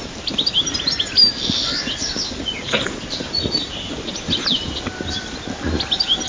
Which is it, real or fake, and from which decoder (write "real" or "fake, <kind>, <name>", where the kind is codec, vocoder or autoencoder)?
real